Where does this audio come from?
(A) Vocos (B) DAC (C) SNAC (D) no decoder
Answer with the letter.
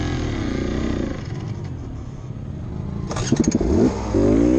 D